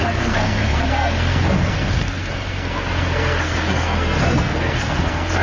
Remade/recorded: remade